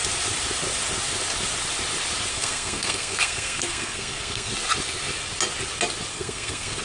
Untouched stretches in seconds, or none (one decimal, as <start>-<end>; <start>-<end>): 0.0-2.3; 4.5-6.1